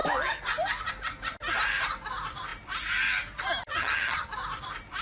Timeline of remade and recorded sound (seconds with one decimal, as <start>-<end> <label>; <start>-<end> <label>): 0.0-3.7 recorded; 3.7-4.3 remade; 4.3-5.0 recorded